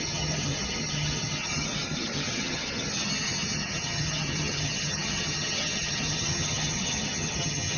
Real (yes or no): no